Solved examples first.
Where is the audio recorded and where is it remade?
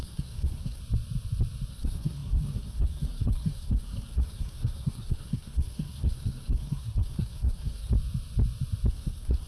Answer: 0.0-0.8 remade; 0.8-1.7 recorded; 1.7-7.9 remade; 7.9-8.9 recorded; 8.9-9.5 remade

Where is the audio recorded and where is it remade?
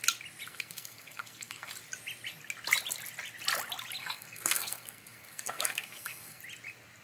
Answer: 0.0-0.5 recorded; 0.5-1.7 remade; 1.7-4.0 recorded; 4.0-6.4 remade; 6.4-7.0 recorded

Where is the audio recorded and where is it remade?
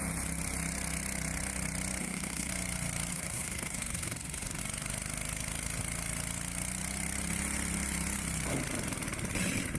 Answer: 0.0-2.0 recorded; 2.0-2.5 remade; 2.5-3.1 recorded; 3.1-4.6 remade; 4.6-9.8 recorded